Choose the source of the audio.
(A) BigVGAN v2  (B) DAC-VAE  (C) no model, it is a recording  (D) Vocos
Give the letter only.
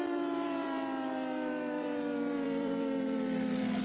A